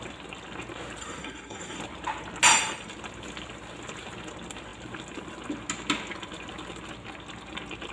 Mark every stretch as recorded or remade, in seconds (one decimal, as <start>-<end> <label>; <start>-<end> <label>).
0.0-1.0 recorded; 1.0-1.8 remade; 1.8-7.9 recorded